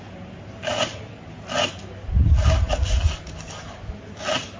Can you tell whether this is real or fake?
real